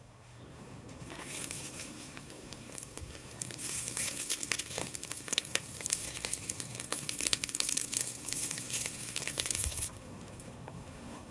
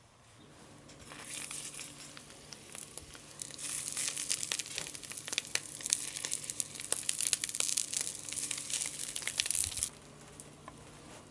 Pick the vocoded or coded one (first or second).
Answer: first